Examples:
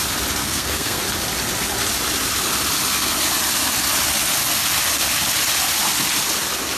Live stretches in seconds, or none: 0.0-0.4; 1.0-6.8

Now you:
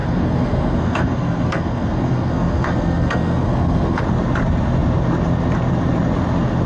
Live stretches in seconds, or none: 4.0-6.7

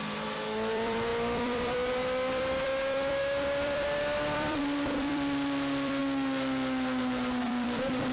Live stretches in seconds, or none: 6.0-7.0